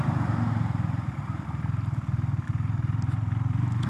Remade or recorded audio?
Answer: recorded